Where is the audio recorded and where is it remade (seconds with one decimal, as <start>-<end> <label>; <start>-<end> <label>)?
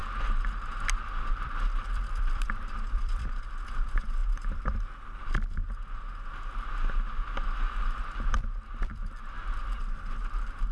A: 0.0-1.3 recorded; 1.3-4.2 remade; 4.2-8.0 recorded; 8.0-10.7 remade